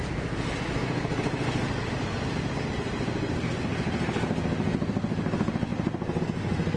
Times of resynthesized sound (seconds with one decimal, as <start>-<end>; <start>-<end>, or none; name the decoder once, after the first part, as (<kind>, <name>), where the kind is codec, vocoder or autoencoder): 1.6-3.5 (vocoder, BigVGAN v2); 5.7-6.2